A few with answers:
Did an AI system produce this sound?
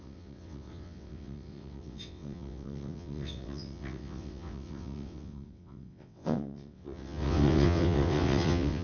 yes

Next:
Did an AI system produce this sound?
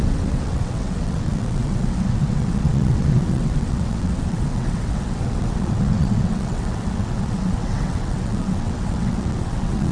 yes